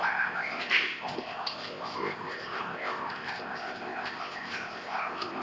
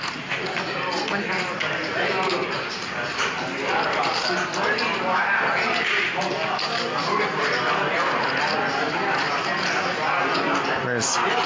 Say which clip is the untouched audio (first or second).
second